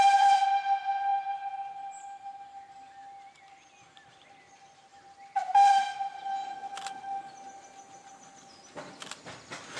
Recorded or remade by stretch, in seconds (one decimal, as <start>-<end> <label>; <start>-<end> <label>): 0.0-9.8 recorded